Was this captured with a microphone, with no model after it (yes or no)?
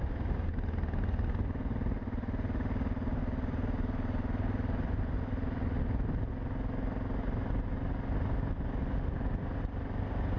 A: yes